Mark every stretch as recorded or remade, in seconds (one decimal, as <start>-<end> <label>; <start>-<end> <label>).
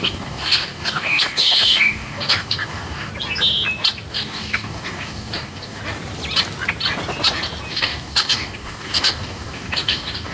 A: 0.0-3.1 remade; 3.1-4.1 recorded; 4.1-5.8 remade; 5.8-7.7 recorded; 7.7-10.3 remade